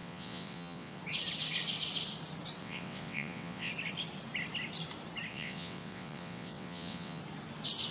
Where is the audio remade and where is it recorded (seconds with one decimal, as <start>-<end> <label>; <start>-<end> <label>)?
0.0-1.0 remade; 1.0-2.6 recorded; 2.6-3.7 remade; 3.7-5.3 recorded; 5.3-7.2 remade; 7.2-7.9 recorded